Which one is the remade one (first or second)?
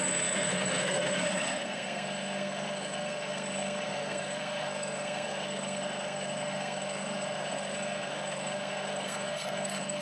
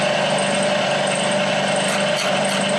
first